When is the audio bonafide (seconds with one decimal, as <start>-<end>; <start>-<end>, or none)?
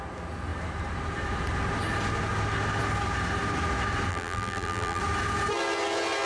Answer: 0.0-4.1; 5.0-6.3